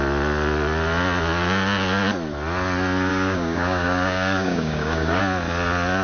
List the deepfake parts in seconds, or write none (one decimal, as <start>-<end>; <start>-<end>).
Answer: 3.1-5.2